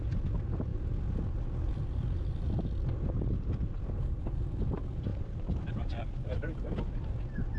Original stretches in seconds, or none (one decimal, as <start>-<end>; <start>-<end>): 0.0-7.6